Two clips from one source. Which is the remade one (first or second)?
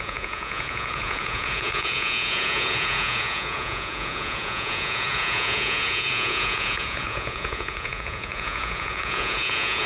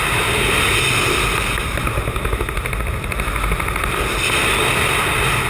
first